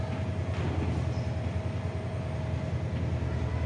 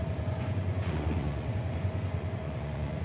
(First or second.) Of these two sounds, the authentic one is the first